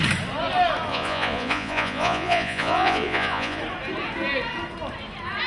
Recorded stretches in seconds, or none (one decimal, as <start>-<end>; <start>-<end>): 0.0-0.9; 3.6-5.5